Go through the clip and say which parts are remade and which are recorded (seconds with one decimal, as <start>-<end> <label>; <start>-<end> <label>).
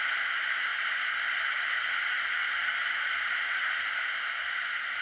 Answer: 0.0-5.0 recorded